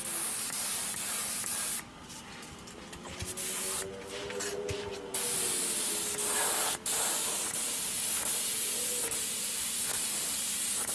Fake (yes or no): no